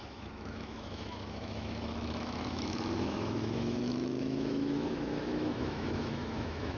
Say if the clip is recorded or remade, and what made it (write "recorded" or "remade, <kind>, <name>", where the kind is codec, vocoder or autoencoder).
remade, autoencoder, DAC-VAE